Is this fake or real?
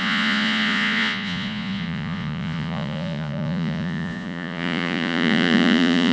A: fake